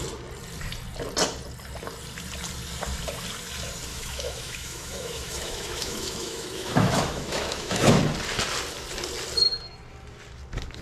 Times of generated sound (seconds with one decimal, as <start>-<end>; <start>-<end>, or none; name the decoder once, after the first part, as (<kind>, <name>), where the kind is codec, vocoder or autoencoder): 3.9-8.0 (autoencoder, DAC-VAE)